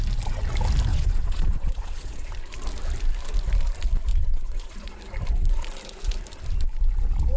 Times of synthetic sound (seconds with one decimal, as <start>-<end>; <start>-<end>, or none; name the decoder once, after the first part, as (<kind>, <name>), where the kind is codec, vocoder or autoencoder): 0.9-2.3 (vocoder, Vocos); 4.1-5.0